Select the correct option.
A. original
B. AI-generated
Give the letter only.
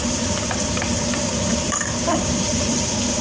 B